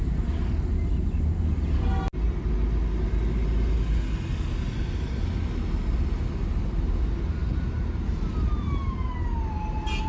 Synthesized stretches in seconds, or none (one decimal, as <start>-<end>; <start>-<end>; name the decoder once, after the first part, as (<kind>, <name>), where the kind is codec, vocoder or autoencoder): none